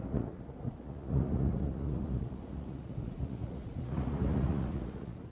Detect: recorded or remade remade